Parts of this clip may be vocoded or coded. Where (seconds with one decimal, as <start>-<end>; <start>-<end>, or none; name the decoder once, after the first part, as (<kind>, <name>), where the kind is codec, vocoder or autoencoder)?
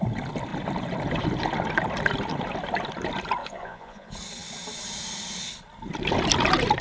3.4-4.1 (vocoder, Vocos)